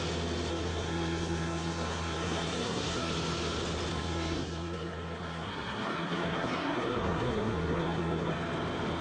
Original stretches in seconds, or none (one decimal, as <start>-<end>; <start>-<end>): 0.0-0.5; 3.1-3.9; 8.3-9.0